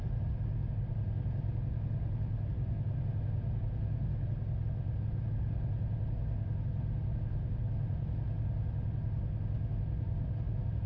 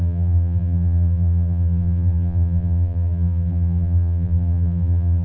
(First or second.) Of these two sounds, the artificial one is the second